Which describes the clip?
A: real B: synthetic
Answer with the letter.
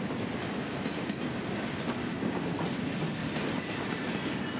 A